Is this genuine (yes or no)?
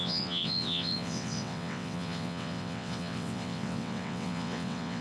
no